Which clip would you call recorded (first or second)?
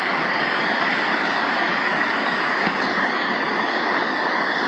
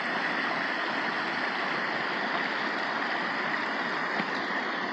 second